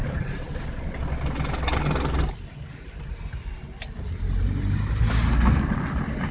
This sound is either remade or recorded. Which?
recorded